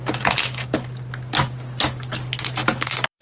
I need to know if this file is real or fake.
real